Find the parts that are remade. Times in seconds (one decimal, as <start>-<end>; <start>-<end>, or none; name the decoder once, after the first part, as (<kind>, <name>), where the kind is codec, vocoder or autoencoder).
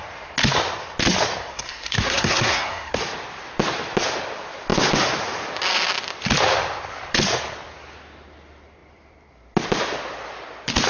1.5-3.0 (codec, SNAC)